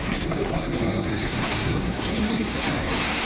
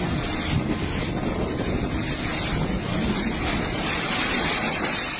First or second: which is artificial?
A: first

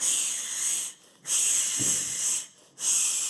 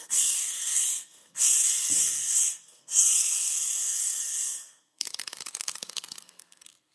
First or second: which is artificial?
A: second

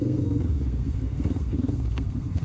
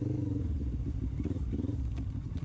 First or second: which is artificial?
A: first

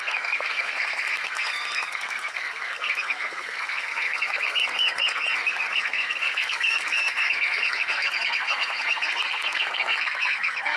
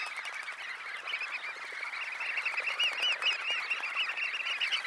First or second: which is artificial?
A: first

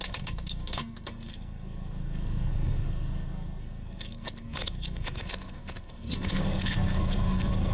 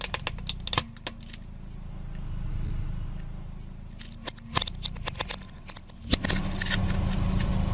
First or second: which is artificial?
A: first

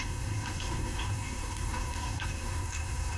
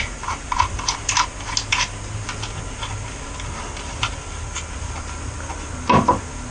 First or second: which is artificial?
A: first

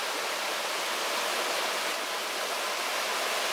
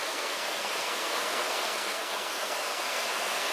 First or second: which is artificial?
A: second